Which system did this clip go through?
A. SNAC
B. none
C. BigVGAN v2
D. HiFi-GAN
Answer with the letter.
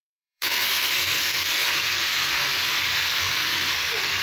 A